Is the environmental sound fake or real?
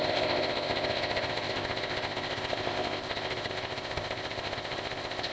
fake